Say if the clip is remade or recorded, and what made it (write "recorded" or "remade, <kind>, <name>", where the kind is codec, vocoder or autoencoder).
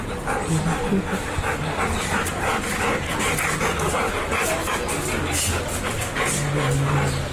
recorded